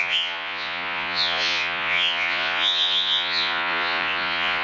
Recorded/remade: remade